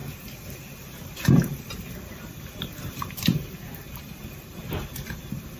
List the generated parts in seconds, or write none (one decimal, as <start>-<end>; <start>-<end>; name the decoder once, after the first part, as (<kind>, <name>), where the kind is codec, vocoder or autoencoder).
0.0-1.5 (vocoder, BigVGAN v2); 2.1-4.5